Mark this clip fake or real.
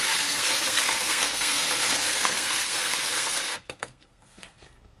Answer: fake